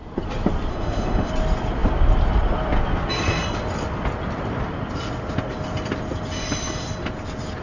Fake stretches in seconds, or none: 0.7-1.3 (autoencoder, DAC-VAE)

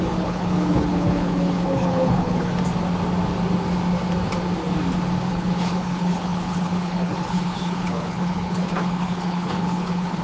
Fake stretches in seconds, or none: 0.0-2.5 (codec, HILCodec); 5.3-10.2

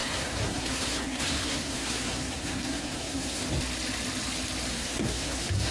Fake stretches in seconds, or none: 0.0-3.4 (codec, SNAC); 4.7-5.7

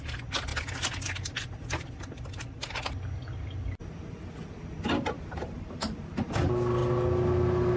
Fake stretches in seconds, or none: none

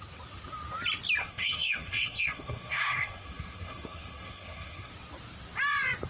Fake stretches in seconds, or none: 1.2-4.9 (codec, SNAC)

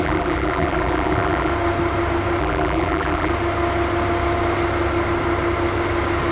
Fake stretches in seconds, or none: 0.0-1.5 (vocoder, BigVGAN v2); 2.4-3.3

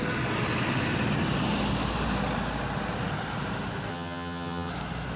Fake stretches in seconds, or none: 3.9-4.7 (vocoder, HiFi-GAN)

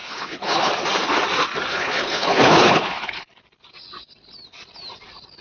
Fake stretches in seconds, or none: 0.0-0.7 (codec, HILCodec); 1.7-3.3